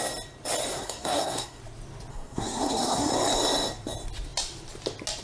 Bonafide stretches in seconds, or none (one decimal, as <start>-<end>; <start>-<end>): 0.0-0.7; 1.6-2.1; 3.1-5.2